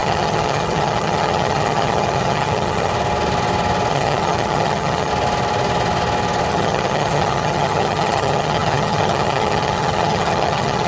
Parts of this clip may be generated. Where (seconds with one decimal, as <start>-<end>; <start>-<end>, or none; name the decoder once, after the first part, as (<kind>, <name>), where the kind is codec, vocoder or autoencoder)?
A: 0.0-2.9 (vocoder, HiFi-GAN); 3.9-5.1; 6.5-10.9